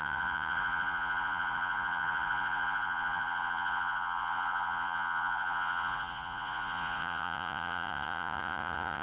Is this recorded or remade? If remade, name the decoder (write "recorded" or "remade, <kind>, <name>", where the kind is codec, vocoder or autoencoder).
remade, vocoder, Vocos